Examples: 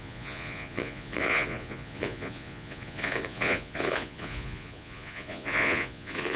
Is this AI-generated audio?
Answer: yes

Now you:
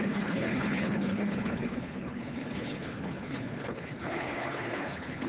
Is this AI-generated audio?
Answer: yes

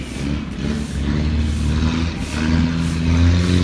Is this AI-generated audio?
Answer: no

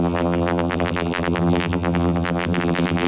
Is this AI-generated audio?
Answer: yes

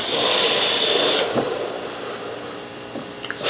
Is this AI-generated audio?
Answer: yes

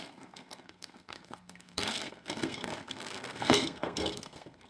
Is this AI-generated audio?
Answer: yes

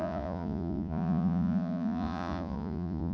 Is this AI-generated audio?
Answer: yes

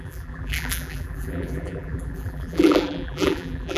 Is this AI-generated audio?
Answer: yes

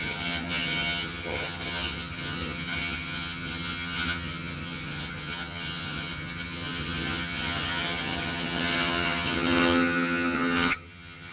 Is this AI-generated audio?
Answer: yes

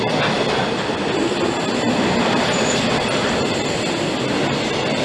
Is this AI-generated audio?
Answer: no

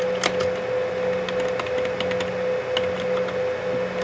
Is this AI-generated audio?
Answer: no